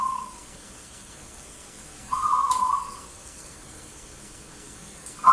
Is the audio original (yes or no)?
no